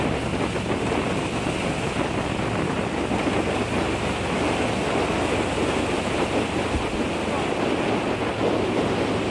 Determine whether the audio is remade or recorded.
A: recorded